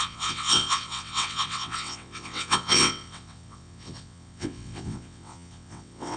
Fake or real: fake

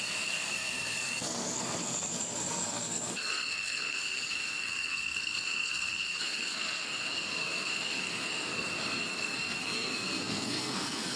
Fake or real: fake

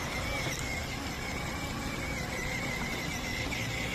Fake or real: real